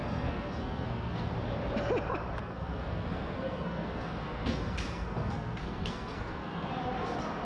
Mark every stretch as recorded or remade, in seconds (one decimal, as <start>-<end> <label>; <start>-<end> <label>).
0.0-1.3 remade; 1.3-2.4 recorded; 2.4-6.7 remade; 6.7-7.4 recorded